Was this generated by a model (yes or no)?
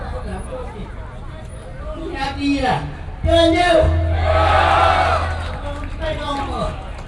no